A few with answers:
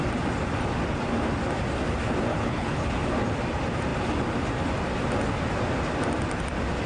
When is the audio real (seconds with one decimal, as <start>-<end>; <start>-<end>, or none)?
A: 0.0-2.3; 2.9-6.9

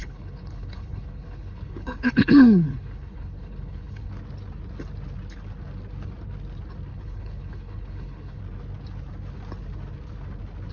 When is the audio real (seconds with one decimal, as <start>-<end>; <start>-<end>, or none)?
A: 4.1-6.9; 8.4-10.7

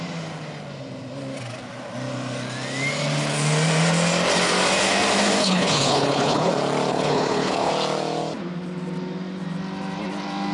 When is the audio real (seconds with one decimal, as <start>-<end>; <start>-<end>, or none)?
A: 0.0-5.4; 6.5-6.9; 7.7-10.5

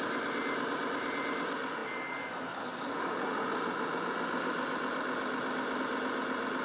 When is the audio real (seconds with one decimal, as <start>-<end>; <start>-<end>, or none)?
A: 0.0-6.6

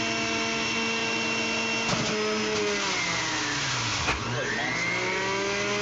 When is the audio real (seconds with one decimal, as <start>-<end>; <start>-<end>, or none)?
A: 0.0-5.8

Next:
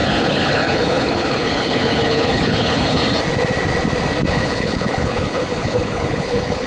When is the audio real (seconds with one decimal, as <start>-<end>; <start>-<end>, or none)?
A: 3.0-4.3